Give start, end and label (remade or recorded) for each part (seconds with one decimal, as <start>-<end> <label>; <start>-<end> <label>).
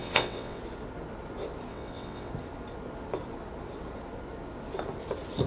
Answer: 0.0-0.6 remade; 0.6-1.7 recorded; 1.7-2.3 remade; 2.3-5.5 recorded